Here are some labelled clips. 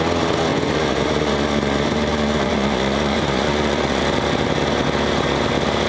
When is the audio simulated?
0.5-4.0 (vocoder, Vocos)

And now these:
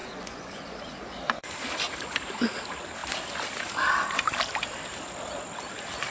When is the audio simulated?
0.0-1.5 (vocoder, Vocos)

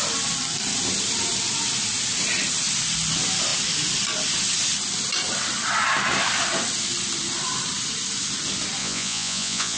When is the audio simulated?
8.8-9.8 (vocoder, Vocos)

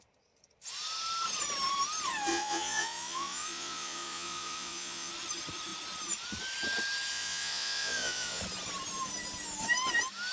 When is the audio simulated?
2.3-5.1 (vocoder, Vocos); 7.1-8.4

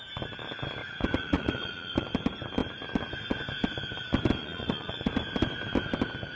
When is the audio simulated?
0.8-2.1 (vocoder, Vocos); 4.4-5.2